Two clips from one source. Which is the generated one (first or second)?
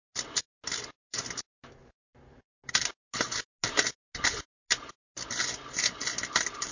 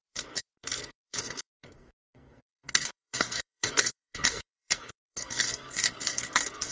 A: second